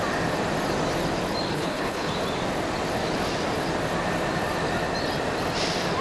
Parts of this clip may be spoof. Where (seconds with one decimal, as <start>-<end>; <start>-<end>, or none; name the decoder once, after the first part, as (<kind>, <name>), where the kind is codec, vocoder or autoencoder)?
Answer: 1.5-2.1 (codec, HILCodec)